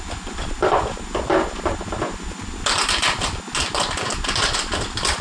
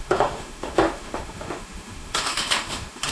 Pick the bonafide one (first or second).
first